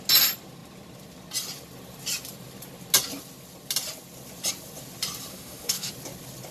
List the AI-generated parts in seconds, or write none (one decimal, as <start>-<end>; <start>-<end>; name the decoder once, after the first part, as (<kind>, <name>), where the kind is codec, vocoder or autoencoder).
5.3-5.9 (autoencoder, DAC-VAE)